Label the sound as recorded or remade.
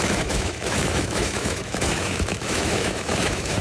remade